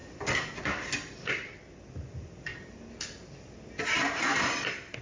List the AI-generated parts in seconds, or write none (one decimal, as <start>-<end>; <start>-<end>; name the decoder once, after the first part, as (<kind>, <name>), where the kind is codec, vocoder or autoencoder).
none